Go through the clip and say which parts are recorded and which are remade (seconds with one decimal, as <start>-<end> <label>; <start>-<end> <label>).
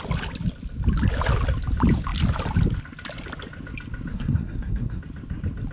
0.0-4.1 recorded; 4.1-5.0 remade; 5.0-5.7 recorded